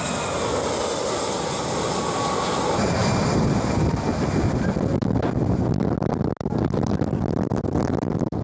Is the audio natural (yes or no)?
yes